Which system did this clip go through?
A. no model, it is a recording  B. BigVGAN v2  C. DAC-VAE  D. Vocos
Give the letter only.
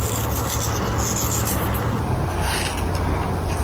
A